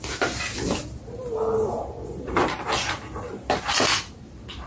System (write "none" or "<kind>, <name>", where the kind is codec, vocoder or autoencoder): none